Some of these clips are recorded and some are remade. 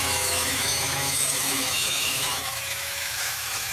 remade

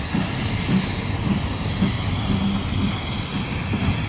recorded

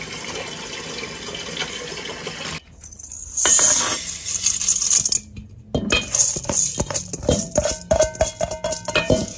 recorded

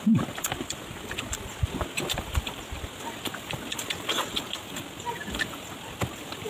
remade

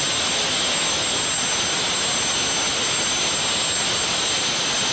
recorded